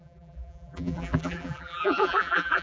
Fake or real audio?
fake